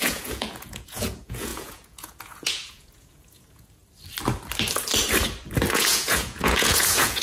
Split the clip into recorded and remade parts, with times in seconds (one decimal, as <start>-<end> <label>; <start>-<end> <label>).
0.0-3.8 remade; 3.8-5.7 recorded; 5.7-7.2 remade